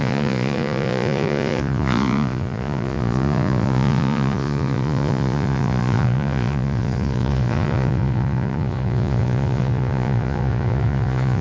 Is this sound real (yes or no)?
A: no